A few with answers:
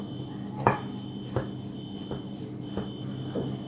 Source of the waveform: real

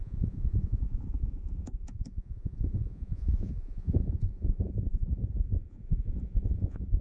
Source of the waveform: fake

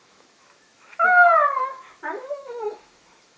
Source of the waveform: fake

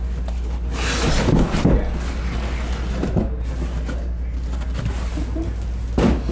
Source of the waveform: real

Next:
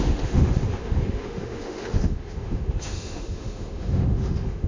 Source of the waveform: fake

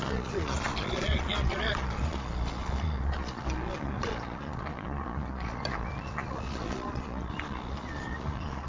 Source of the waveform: fake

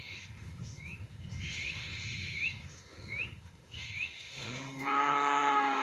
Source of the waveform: fake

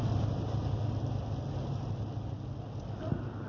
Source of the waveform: real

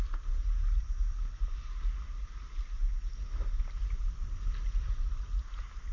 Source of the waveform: real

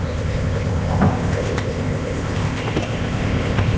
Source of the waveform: fake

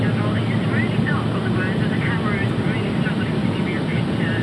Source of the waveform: real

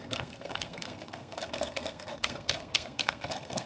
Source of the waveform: fake